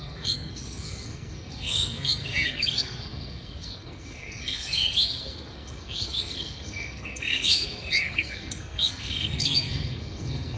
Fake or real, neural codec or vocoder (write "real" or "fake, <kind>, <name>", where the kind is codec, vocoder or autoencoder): fake, codec, SNAC